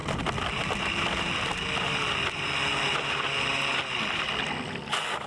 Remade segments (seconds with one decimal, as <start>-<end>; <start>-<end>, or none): none